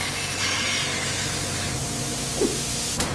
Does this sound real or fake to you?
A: fake